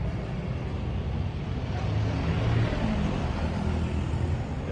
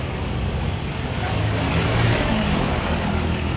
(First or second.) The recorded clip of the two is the first